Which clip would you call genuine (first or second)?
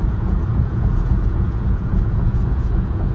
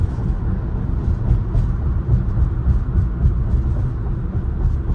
second